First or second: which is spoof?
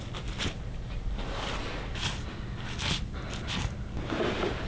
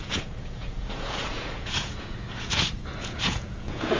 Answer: second